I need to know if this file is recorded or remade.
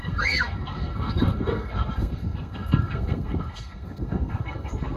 remade